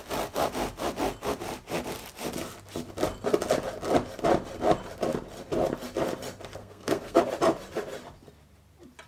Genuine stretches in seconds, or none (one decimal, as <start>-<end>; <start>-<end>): 0.0-6.6; 7.2-9.1